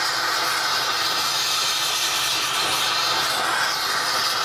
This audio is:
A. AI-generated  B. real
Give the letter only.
B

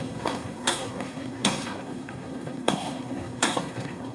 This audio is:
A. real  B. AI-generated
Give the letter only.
B